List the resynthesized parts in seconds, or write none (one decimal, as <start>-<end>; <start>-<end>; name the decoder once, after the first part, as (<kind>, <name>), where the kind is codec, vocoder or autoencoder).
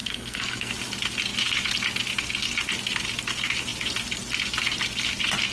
0.0-0.7 (codec, SNAC)